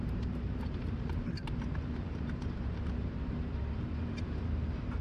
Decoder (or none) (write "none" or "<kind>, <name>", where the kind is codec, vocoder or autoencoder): vocoder, BigVGAN v2